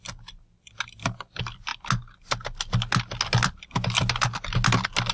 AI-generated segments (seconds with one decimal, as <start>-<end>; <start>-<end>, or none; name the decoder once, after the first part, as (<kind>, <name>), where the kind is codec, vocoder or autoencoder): none